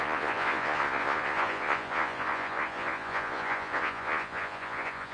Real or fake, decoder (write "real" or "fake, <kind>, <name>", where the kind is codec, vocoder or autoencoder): fake, vocoder, Vocos